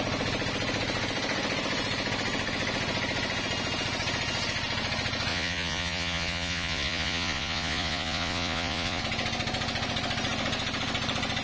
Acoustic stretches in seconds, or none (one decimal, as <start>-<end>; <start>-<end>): 0.0-5.3; 9.0-11.4

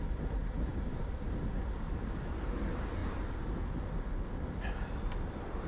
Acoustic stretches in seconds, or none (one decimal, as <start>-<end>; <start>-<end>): 0.0-0.7; 1.4-5.7

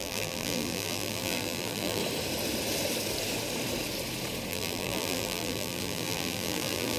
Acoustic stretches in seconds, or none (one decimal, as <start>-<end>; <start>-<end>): 2.0-4.5

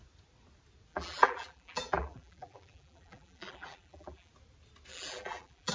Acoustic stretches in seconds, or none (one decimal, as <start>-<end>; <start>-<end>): 0.0-0.9; 4.3-4.9

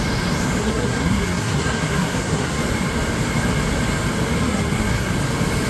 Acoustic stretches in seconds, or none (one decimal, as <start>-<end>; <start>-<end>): 0.0-0.6; 2.6-4.4; 5.1-5.7

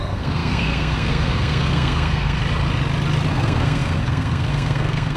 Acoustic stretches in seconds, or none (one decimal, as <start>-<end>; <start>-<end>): 2.4-3.3